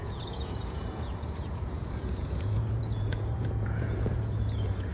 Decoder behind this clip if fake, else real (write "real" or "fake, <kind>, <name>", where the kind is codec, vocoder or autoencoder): fake, vocoder, Vocos